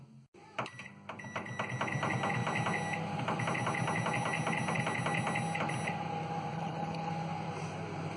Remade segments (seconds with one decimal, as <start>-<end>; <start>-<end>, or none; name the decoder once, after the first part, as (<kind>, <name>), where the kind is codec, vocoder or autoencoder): 6.5-7.1 (codec, HILCodec)